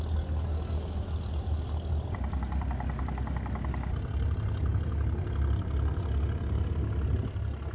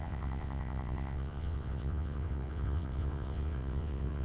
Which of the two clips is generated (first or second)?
second